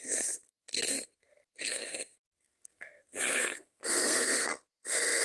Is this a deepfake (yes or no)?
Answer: yes